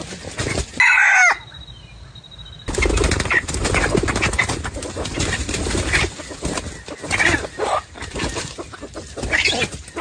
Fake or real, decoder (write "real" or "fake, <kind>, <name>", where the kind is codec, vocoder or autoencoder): real